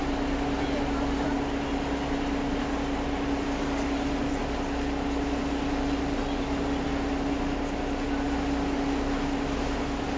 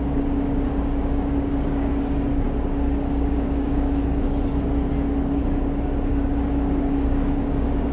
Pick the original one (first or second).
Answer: first